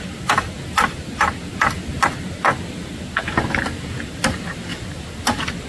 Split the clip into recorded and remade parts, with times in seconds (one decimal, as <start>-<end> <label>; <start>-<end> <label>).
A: 0.0-5.7 recorded